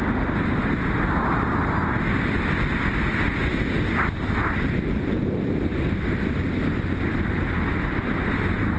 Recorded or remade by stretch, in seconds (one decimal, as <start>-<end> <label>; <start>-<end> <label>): 0.0-8.8 recorded